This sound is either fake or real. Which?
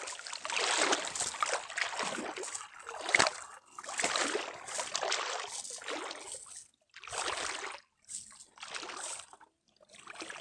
real